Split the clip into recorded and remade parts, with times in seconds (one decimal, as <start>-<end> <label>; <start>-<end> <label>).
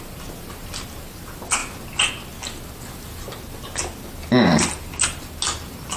0.0-6.0 recorded